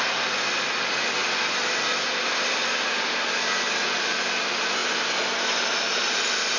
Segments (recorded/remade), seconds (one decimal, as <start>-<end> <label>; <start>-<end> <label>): 0.0-6.6 recorded